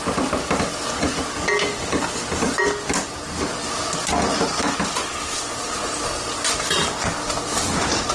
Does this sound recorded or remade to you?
recorded